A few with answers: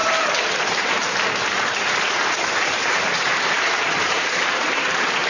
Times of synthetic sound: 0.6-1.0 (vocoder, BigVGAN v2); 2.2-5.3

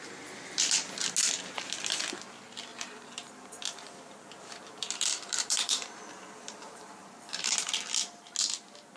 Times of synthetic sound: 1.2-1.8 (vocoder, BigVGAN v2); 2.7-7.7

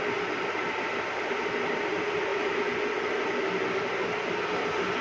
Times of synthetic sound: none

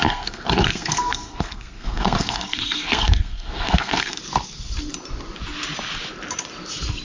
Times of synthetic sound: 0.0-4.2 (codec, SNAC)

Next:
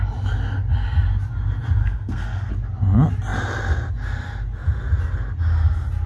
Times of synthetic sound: 1.8-2.5 (codec, SNAC)

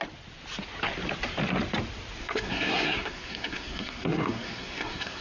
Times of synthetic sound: 2.2-5.2 (codec, SNAC)

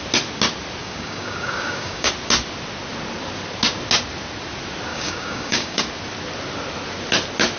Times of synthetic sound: 0.8-2.1 (codec, DAC); 4.9-5.8